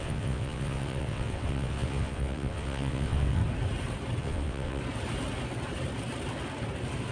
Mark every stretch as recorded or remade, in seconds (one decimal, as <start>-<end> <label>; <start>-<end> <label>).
0.0-3.4 remade; 3.4-4.2 recorded; 4.2-4.8 remade; 4.8-7.1 recorded